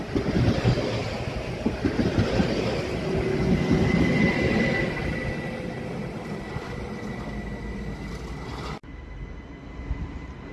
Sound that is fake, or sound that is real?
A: real